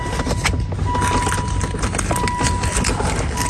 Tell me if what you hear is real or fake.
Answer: real